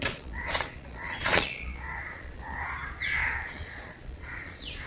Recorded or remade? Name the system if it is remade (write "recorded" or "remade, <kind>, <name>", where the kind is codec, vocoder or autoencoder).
remade, vocoder, Vocos